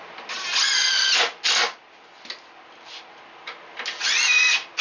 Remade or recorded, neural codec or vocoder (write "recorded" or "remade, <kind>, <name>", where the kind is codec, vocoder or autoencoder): recorded